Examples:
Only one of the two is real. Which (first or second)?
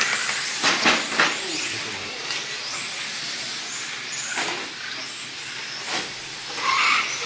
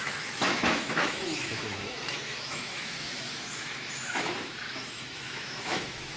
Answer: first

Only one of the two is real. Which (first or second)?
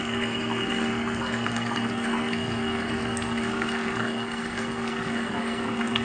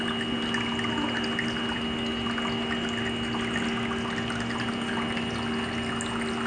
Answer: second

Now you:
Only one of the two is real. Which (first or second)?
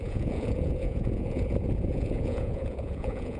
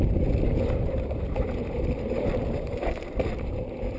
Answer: second